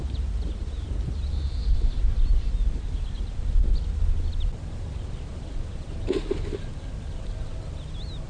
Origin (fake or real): real